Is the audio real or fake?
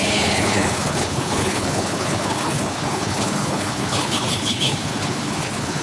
fake